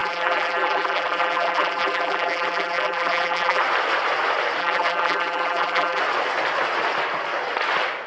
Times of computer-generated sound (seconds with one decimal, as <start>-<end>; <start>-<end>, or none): 0.0-3.6; 4.6-6.0